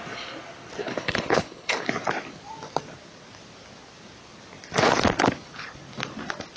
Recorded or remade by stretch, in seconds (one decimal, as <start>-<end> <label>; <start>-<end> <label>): 0.0-0.8 recorded; 0.8-1.9 remade; 1.9-6.6 recorded